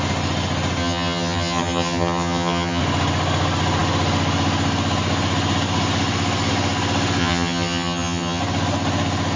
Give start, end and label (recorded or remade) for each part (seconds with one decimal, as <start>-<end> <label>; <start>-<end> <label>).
0.0-0.8 recorded; 0.8-2.8 remade; 2.8-7.2 recorded; 7.2-8.4 remade; 8.4-9.4 recorded